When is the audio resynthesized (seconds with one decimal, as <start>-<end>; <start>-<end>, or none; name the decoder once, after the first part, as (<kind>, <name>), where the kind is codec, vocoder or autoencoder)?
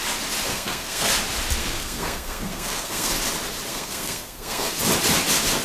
0.5-1.1 (codec, SNAC); 1.6-3.1; 3.7-4.8